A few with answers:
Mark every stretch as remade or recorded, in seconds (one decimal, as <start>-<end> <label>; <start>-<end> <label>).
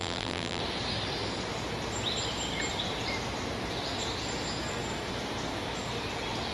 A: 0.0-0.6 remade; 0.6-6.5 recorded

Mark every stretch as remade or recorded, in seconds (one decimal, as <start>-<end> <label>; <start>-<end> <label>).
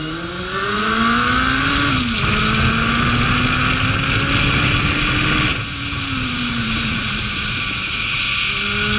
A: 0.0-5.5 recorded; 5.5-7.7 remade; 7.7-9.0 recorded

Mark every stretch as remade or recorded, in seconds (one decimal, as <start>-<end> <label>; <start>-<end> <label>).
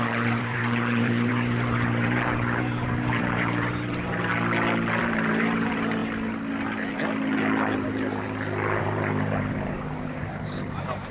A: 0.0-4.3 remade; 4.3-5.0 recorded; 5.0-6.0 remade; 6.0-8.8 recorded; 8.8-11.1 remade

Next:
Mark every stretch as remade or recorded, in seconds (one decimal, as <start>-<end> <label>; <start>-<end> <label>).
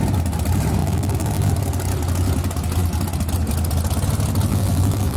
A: 0.0-0.8 recorded; 0.8-1.5 remade; 1.5-4.5 recorded; 4.5-5.2 remade